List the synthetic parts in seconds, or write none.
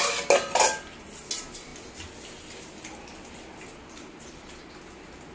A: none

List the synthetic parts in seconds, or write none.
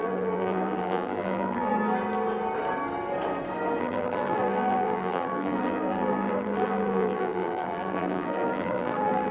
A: 0.0-1.7 (vocoder, BigVGAN v2); 3.8-9.3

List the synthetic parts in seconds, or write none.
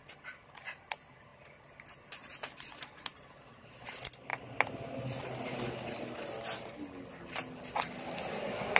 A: none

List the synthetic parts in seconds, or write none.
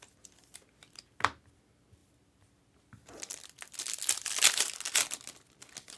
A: none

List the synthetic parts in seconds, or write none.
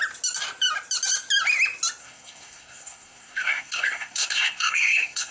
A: 2.0-5.3 (codec, SNAC)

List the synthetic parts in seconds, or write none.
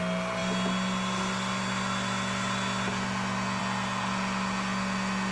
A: none